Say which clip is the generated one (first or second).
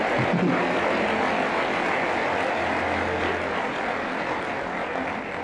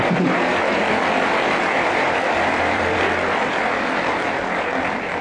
second